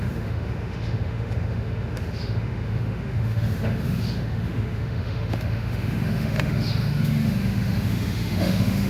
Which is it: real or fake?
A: fake